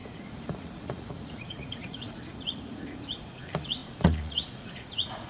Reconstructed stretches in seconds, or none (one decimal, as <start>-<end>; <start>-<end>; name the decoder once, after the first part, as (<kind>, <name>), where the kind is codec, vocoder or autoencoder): 0.0-5.3 (vocoder, Vocos)